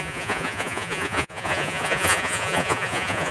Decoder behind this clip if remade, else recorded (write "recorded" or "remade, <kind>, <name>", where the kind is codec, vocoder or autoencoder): remade, vocoder, Vocos